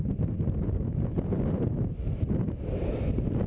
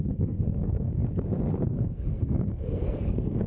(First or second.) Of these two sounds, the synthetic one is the second